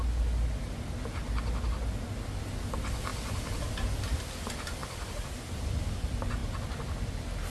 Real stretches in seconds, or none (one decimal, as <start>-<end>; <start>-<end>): 0.0-7.5